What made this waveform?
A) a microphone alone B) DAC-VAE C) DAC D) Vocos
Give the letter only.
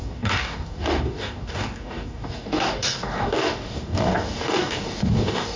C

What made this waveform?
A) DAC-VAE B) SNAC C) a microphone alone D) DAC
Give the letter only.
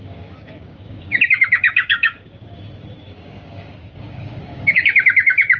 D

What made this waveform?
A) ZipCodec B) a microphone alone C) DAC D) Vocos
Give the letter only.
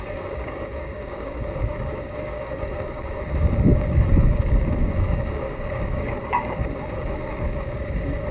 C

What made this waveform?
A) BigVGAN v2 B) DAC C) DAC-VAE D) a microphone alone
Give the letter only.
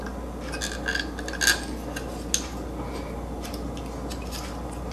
D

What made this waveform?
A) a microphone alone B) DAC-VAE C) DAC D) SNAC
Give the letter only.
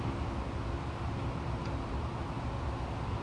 A